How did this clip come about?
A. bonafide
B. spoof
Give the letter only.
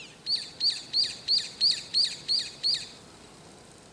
A